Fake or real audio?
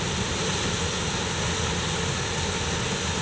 real